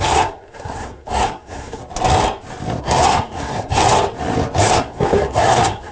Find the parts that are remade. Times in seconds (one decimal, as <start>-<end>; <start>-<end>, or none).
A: 0.0-1.8; 2.8-3.8; 4.6-5.9